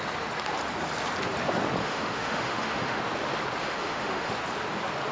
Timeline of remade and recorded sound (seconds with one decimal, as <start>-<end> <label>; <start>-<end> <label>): 0.0-1.8 recorded; 1.8-3.0 remade; 3.0-3.6 recorded; 3.6-4.3 remade; 4.3-5.1 recorded